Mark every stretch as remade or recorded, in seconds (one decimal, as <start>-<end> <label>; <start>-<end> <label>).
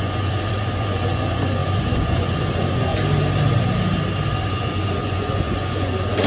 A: 0.0-2.9 remade; 2.9-4.5 recorded; 4.5-6.3 remade